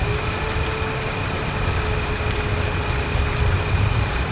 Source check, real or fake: real